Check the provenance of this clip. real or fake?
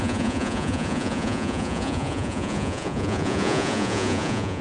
fake